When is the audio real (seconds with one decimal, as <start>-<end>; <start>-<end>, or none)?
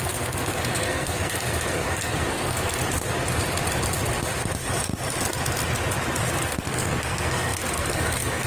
2.8-6.4